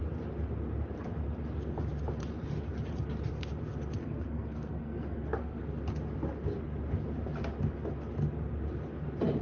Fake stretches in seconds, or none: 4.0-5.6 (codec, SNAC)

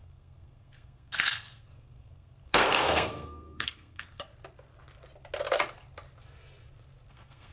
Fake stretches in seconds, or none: 0.0-4.3 (codec, SNAC); 7.1-7.5

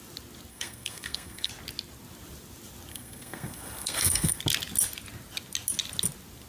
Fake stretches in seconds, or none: 0.5-1.5 (codec, SNAC); 2.9-4.4

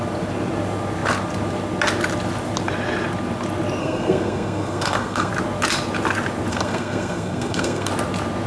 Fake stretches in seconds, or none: 3.8-5.3 (codec, SNAC); 6.5-7.9